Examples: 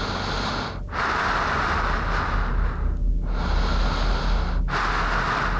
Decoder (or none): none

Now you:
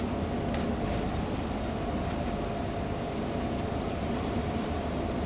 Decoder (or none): none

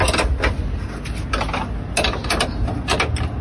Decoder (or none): none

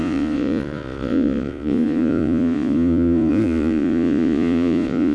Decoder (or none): vocoder, Vocos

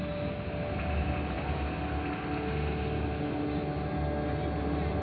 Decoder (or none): none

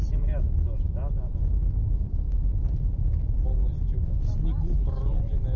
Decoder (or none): none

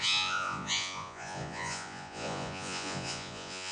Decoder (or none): vocoder, Vocos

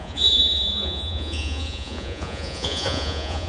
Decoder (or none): vocoder, Vocos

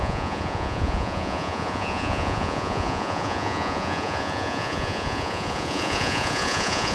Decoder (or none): vocoder, Vocos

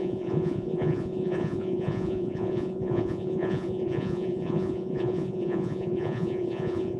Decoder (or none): vocoder, Vocos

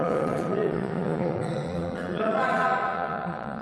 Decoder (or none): vocoder, Vocos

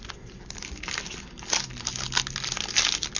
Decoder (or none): none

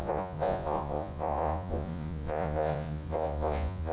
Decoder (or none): vocoder, Vocos